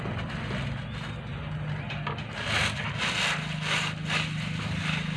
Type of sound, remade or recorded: recorded